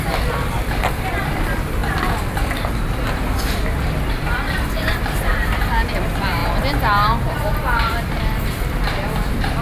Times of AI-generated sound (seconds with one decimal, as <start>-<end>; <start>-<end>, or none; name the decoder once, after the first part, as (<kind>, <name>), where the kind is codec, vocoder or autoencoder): 0.0-1.8 (vocoder, BigVGAN v2); 3.5-6.4; 7.6-9.6